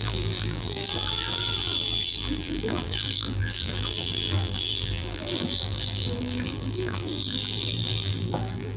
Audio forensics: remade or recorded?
remade